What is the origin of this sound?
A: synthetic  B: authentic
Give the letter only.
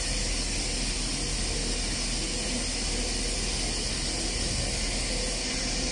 B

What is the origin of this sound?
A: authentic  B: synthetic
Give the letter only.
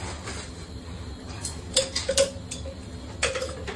A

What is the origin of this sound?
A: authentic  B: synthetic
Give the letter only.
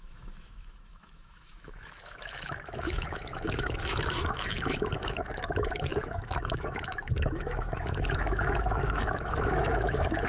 B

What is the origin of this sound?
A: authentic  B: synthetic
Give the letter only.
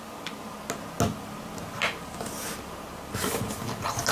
A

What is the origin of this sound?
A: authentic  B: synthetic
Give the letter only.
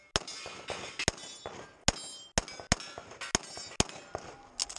A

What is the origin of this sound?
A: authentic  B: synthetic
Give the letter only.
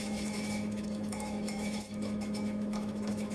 B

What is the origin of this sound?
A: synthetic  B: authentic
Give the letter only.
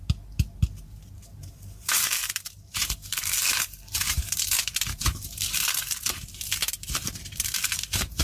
A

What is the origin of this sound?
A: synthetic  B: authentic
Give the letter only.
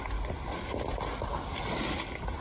B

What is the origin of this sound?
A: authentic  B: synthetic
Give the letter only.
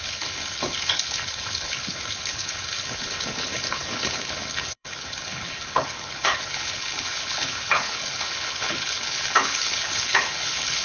B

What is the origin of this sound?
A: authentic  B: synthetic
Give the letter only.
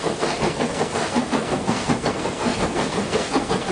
B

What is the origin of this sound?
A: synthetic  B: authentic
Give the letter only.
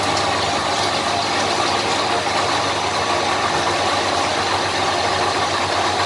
B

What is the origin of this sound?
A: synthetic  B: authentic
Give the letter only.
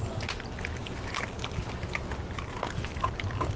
B